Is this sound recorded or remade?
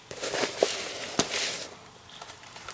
remade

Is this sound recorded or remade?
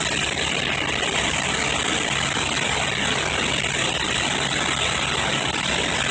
recorded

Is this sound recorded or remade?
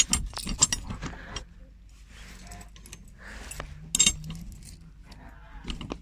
recorded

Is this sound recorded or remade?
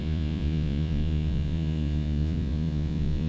remade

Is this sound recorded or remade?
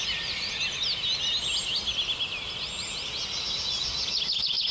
recorded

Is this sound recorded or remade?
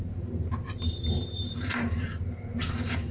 remade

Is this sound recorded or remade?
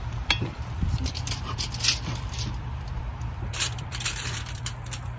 remade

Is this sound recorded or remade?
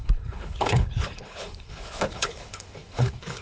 remade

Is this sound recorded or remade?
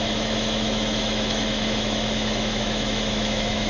remade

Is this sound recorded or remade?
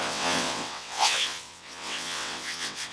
remade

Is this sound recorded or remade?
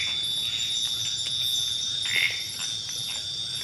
recorded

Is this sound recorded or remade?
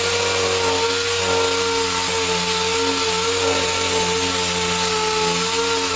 recorded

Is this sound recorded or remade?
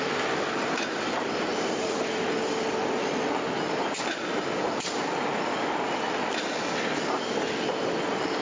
recorded